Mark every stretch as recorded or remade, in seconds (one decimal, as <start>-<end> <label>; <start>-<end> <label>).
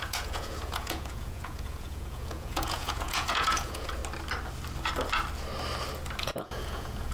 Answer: 0.0-4.0 remade; 4.0-6.2 recorded; 6.2-7.1 remade